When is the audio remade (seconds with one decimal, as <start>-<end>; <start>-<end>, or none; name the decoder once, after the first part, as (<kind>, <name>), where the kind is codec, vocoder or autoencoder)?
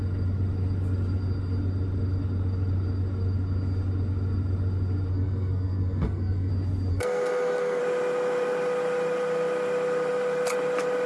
5.1-6.5 (codec, SNAC); 6.9-7.8